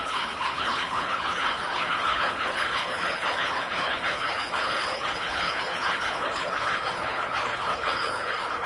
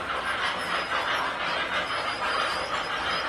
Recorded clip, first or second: second